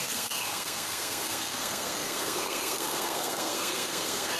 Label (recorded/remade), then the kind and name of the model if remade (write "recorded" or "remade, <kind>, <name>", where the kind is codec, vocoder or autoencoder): remade, codec, SNAC